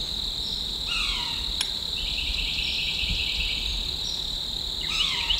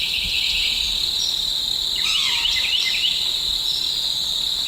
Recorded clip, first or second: first